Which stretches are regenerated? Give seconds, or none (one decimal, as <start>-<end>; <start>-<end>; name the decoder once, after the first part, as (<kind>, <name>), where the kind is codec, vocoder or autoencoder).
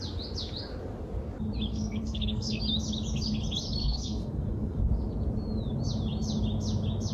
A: 1.7-2.6 (codec, SNAC); 3.8-4.8